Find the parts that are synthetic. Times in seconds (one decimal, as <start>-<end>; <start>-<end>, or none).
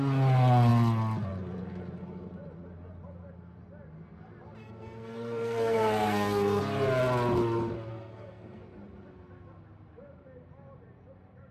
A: 4.6-6.6; 7.9-8.6